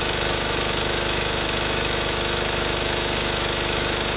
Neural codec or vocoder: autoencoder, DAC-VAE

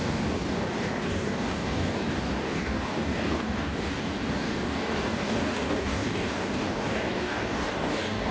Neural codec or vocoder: codec, DAC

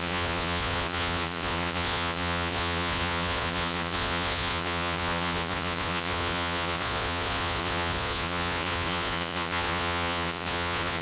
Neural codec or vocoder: vocoder, Vocos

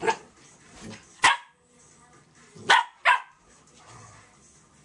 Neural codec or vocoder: none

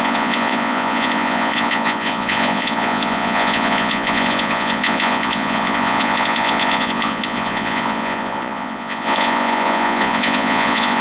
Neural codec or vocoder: vocoder, Vocos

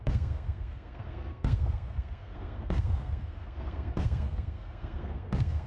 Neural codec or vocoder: codec, SNAC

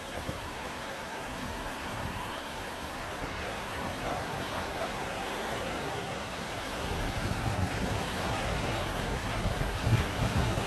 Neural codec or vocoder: codec, SNAC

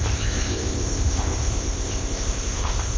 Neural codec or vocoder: codec, ZipCodec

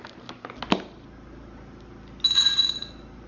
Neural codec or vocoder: none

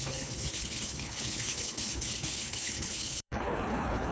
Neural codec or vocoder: codec, HILCodec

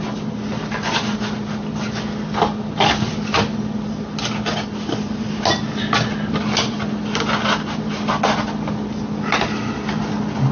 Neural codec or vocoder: none